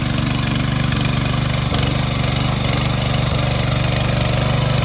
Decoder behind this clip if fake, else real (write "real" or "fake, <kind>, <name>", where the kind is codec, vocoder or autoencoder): real